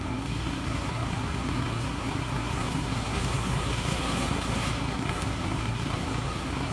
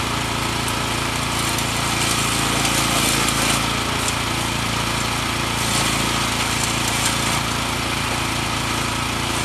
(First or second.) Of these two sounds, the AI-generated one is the first